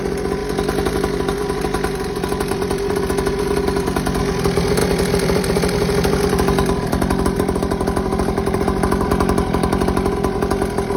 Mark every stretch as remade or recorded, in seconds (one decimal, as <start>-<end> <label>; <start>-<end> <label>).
0.0-0.4 recorded; 0.4-4.2 remade; 4.2-4.8 recorded; 4.8-9.1 remade; 9.1-11.0 recorded